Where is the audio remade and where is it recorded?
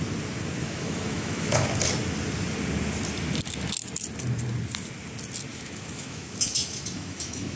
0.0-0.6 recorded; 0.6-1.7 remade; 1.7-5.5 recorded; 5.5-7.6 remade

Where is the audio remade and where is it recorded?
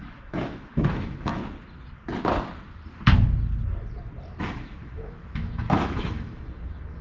0.0-1.4 remade; 1.4-4.4 recorded; 4.4-7.0 remade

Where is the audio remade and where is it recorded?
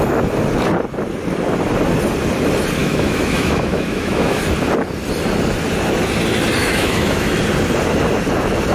0.0-2.8 recorded; 2.8-4.4 remade; 4.4-6.6 recorded; 6.6-7.4 remade; 7.4-8.7 recorded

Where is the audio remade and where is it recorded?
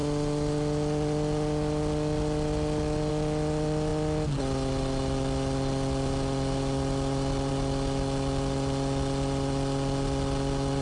0.0-10.8 recorded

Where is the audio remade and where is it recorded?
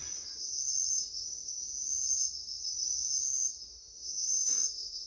0.0-0.9 recorded; 0.9-1.6 remade; 1.6-3.7 recorded; 3.7-5.1 remade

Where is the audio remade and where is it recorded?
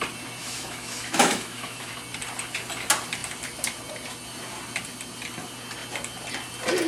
0.0-0.4 recorded; 0.4-1.9 remade; 1.9-6.9 recorded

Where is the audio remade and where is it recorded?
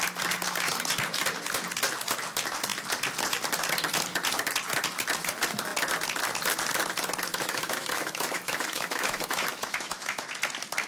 0.0-7.3 recorded; 7.3-10.2 remade; 10.2-10.9 recorded